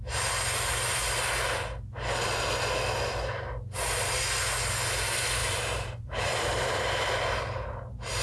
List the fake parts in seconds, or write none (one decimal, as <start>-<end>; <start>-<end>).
5.4-7.1